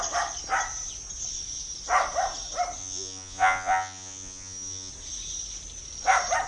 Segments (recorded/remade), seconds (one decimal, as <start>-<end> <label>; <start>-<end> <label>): 0.0-2.8 recorded; 2.8-4.9 remade; 4.9-6.5 recorded